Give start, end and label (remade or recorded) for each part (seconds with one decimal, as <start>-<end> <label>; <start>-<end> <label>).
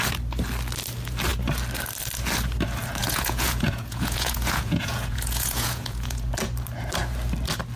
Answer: 0.0-3.0 recorded; 3.0-6.3 remade; 6.3-7.8 recorded